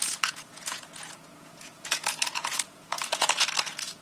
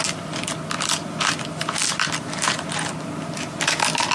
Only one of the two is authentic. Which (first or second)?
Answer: second